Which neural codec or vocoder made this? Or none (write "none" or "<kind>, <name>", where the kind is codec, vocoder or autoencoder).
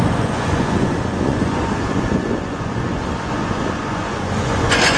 vocoder, Vocos